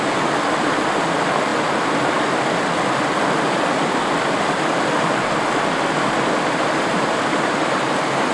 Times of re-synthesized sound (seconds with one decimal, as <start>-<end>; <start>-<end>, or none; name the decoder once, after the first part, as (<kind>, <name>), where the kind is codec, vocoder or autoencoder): none

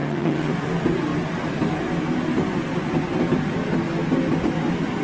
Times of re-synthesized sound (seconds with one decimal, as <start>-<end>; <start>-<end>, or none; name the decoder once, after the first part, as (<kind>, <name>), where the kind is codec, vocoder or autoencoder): 0.0-0.5 (vocoder, HiFi-GAN)

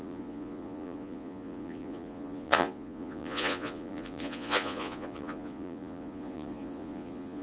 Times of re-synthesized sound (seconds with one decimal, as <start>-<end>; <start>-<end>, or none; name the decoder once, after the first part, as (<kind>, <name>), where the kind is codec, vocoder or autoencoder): 0.0-7.4 (vocoder, Vocos)

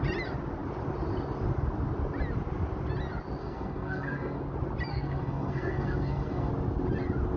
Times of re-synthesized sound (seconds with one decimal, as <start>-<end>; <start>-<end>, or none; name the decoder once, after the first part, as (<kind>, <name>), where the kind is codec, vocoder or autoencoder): 3.4-4.4 (codec, SNAC); 4.9-6.5